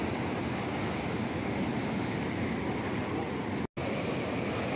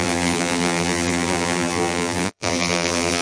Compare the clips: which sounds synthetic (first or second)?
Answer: second